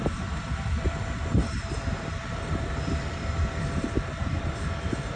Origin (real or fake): fake